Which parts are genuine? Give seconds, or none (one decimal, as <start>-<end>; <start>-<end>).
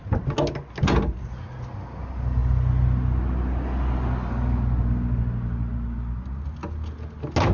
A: 0.0-7.5